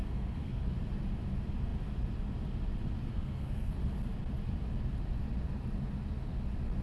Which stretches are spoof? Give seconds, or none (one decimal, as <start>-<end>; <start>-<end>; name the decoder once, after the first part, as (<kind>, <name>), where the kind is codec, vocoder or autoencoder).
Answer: 0.0-0.6 (codec, SNAC); 3.1-3.7